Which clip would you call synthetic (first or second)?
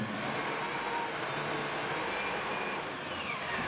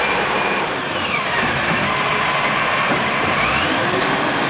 second